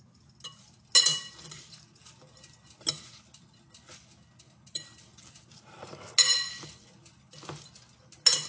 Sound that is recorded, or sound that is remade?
recorded